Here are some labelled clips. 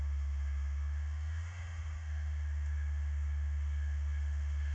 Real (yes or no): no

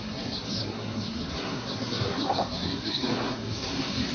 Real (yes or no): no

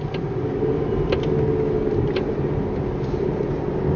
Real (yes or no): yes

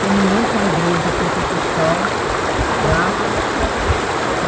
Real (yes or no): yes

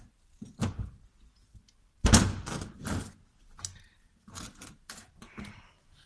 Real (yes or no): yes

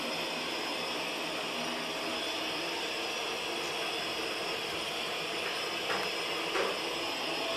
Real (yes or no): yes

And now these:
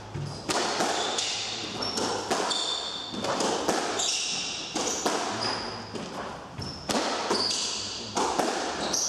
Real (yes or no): yes